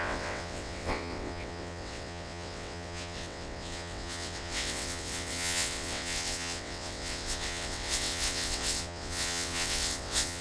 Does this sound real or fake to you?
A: fake